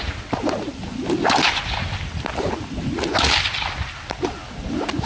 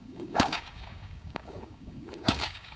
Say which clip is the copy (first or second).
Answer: second